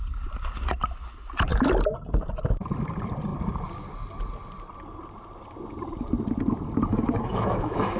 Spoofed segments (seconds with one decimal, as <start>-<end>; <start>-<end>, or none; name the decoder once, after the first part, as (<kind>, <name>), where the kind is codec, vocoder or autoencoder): 6.9-8.0 (autoencoder, DAC-VAE)